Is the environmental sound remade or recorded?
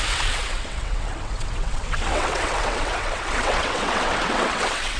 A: remade